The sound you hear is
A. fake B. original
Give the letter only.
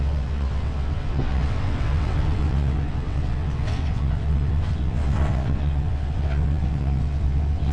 A